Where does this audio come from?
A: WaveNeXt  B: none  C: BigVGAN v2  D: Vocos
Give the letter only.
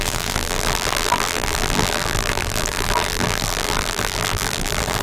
C